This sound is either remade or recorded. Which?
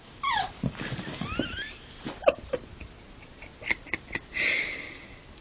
recorded